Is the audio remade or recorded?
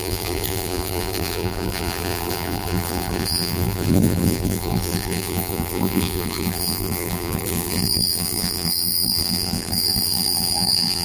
remade